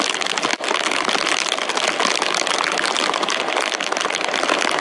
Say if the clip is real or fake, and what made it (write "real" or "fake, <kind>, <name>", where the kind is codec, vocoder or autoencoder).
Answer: real